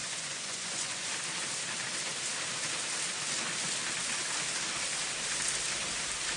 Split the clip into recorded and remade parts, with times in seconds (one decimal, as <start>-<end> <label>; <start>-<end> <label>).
0.0-1.1 remade; 1.1-6.4 recorded